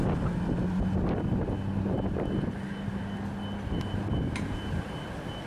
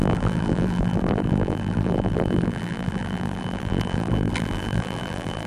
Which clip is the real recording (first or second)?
first